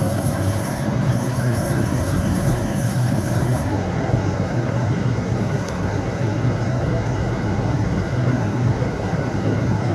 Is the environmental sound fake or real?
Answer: fake